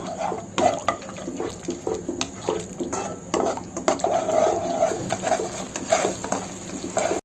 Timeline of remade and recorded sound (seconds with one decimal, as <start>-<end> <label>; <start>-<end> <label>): 0.0-2.3 recorded; 2.3-4.7 remade; 4.7-7.2 recorded